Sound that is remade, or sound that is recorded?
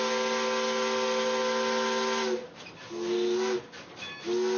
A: recorded